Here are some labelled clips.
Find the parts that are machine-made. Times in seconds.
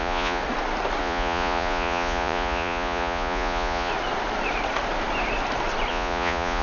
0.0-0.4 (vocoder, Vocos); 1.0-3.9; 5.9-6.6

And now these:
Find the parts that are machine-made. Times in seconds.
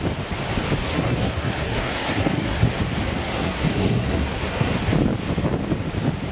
0.8-2.7 (codec, SNAC); 3.1-4.8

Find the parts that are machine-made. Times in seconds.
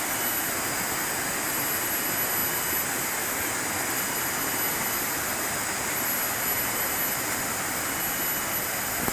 none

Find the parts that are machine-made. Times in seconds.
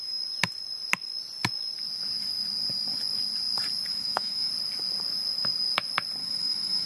3.9-4.5 (autoencoder, DAC-VAE); 6.2-6.9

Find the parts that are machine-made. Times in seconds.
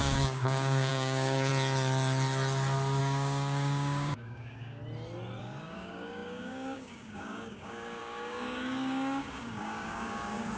0.0-1.5 (codec, DAC); 3.0-4.8; 5.4-10.6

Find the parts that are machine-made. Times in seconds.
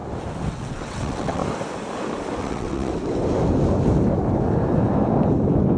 0.5-1.4 (vocoder, WaveNeXt); 2.4-2.9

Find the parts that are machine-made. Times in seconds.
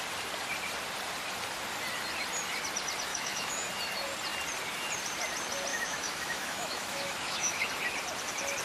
3.1-3.7 (autoencoder, DAC-VAE); 5.7-7.7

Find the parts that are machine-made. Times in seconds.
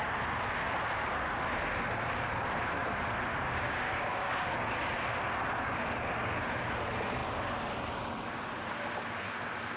3.3-4.5 (codec, DAC)